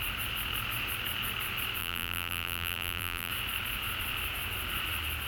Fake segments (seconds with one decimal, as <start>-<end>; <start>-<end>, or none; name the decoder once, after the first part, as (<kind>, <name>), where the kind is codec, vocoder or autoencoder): 1.8-3.3 (vocoder, BigVGAN v2)